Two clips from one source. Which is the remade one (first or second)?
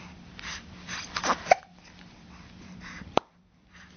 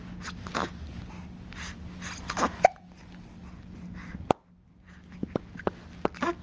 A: first